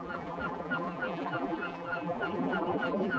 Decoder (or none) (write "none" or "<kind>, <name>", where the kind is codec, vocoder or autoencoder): vocoder, BigVGAN v2